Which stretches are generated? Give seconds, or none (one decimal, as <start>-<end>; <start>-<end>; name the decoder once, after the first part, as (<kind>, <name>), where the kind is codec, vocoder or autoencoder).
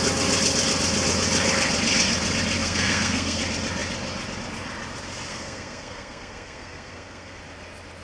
2.6-3.4 (codec, SNAC); 5.3-7.4